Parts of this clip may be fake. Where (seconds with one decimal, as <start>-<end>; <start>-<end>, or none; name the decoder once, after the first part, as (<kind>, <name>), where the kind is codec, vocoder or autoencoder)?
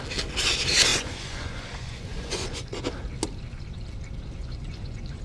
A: 0.9-2.8 (vocoder, Vocos); 4.4-5.2